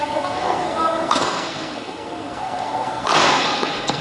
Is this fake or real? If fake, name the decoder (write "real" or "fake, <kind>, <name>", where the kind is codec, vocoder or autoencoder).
fake, codec, SNAC